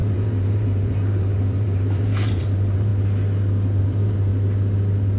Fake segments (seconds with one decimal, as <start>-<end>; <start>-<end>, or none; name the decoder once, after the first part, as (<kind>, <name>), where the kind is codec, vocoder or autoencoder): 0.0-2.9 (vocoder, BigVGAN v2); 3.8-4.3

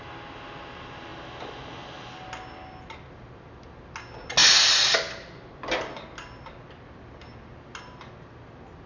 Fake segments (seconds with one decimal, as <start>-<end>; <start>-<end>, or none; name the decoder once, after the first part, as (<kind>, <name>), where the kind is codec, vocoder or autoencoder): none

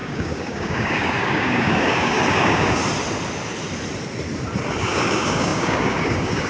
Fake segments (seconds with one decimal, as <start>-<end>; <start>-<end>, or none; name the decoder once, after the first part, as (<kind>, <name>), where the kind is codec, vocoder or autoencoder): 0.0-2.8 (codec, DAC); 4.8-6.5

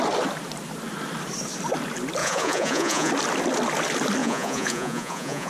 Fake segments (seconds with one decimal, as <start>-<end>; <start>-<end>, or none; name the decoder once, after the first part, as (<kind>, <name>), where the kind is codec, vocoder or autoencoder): 2.2-3.1 (vocoder, Vocos); 4.2-5.5

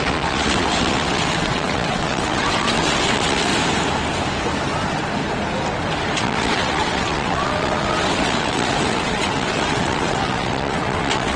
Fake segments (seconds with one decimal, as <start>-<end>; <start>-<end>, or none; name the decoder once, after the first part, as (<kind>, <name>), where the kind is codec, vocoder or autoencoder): 0.0-3.5 (vocoder, WaveNeXt); 6.2-11.4